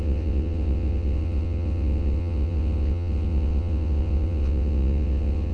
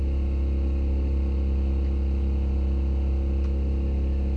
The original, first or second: second